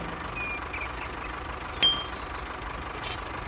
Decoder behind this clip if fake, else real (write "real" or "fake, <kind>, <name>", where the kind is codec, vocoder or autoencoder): real